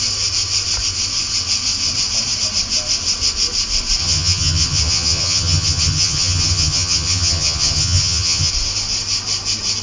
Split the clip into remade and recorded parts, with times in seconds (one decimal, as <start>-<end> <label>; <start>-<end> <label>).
0.0-4.0 recorded; 4.0-8.5 remade; 8.5-9.8 recorded